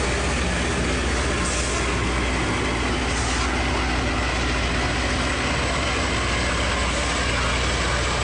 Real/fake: real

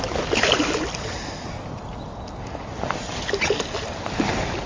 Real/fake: real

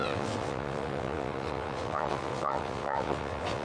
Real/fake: fake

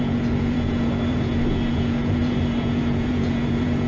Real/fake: fake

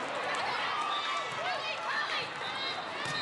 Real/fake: real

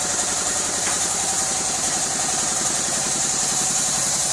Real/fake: fake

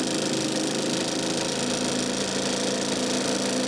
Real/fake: real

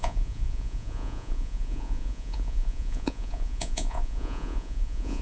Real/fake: fake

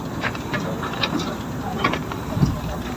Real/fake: fake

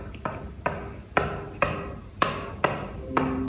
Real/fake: real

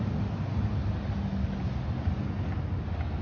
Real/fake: real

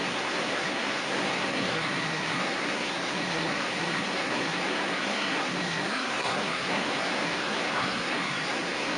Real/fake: fake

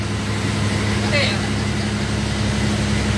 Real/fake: real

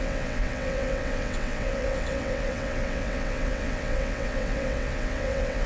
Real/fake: fake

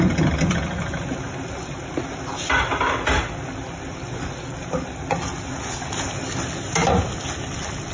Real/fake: real